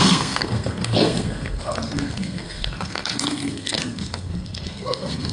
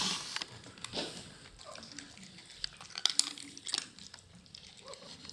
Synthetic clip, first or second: first